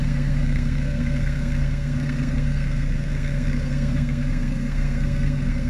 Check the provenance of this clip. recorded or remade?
remade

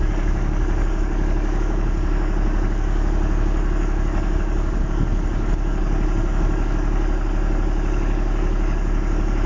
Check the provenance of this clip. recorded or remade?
remade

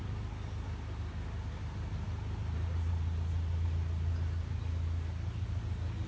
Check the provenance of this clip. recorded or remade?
recorded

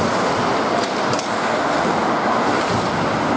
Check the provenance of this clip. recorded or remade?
recorded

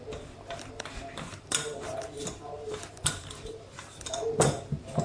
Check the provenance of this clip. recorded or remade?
remade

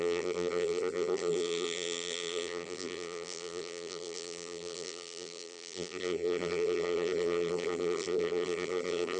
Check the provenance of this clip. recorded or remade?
remade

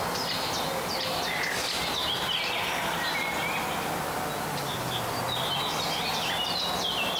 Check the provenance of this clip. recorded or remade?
recorded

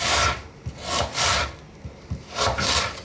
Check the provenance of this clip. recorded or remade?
recorded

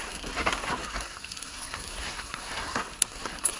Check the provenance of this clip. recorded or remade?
remade